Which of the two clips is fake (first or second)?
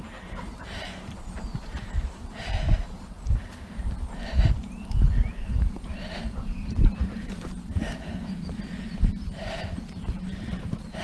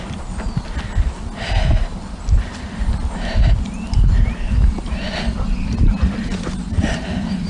first